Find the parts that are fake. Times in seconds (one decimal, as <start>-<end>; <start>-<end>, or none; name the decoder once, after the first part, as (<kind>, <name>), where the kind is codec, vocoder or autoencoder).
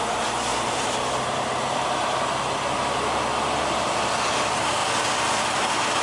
0.5-1.2 (vocoder, BigVGAN v2); 4.8-6.0